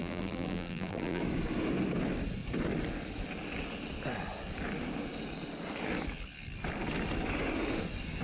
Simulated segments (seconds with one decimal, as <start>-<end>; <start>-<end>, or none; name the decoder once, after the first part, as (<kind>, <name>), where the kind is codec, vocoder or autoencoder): 0.0-1.2 (vocoder, BigVGAN v2)